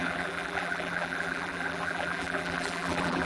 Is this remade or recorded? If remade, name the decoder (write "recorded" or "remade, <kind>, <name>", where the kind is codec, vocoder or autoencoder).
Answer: remade, vocoder, BigVGAN v2